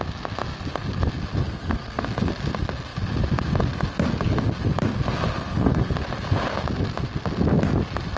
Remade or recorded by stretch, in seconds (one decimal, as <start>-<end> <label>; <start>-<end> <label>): 0.0-1.4 recorded; 1.4-2.0 remade; 2.0-5.3 recorded; 5.3-5.9 remade; 5.9-8.2 recorded